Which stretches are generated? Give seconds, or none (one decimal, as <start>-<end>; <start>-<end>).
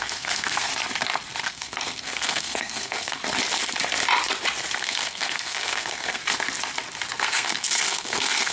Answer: 0.0-0.7; 1.4-3.2; 4.8-6.2; 7.2-8.5